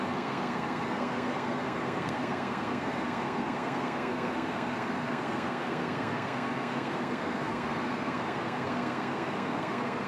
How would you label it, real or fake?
fake